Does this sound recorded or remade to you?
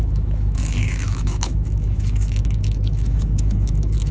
remade